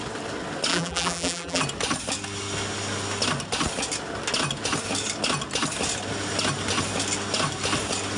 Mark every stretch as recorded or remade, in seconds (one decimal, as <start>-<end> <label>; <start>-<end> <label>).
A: 0.0-0.7 recorded; 0.7-1.6 remade; 1.6-8.2 recorded